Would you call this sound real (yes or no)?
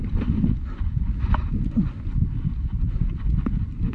yes